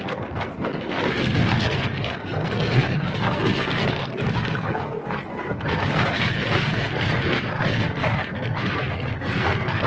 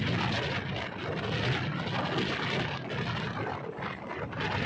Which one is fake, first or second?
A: first